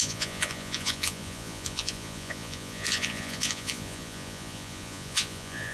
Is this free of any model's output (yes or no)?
no